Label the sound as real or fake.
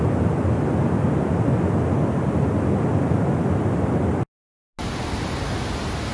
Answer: real